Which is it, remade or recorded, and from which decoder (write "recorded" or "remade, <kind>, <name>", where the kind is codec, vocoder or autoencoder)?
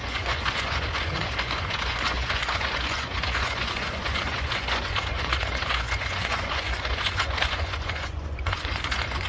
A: remade, vocoder, Vocos